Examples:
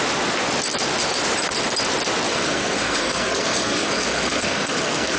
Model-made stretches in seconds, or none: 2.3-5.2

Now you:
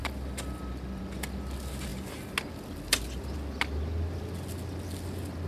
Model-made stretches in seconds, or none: none

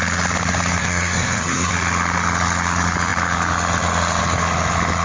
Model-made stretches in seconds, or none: 0.8-1.7

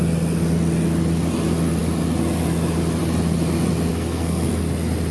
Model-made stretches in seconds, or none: 3.9-4.5

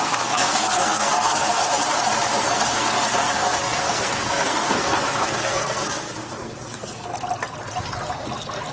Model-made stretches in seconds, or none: 0.0-1.6; 2.4-7.1

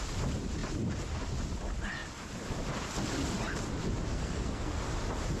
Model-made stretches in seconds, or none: 4.1-4.8

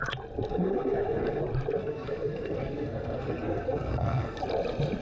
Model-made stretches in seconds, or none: 0.5-1.4; 1.8-4.4